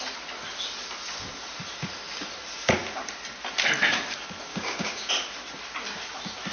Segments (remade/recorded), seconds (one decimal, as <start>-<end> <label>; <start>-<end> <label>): 0.0-4.5 recorded; 4.5-5.1 remade; 5.1-6.5 recorded